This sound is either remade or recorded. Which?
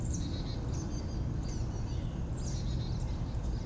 recorded